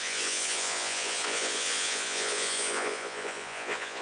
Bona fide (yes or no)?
no